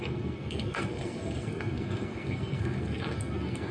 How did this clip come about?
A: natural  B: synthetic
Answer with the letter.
B